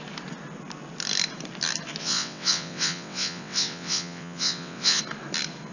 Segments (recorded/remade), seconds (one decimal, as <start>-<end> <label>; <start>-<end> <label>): 0.0-2.0 recorded; 2.0-5.0 remade; 5.0-5.7 recorded